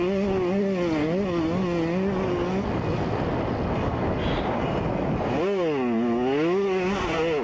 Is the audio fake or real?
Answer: real